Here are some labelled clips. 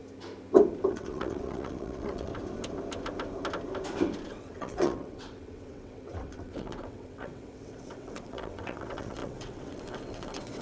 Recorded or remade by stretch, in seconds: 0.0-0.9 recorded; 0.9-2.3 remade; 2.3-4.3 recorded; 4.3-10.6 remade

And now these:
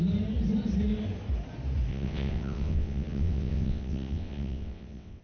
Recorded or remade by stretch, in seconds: 0.0-1.9 recorded; 1.9-5.2 remade